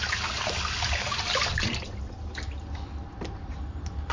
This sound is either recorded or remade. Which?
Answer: recorded